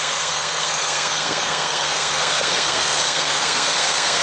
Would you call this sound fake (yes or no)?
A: yes